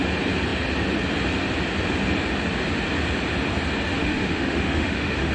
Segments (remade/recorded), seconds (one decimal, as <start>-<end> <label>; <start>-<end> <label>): 0.0-4.0 recorded; 4.0-5.3 remade